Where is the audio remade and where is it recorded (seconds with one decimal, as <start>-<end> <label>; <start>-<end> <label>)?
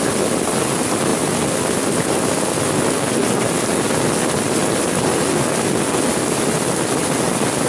0.0-7.7 recorded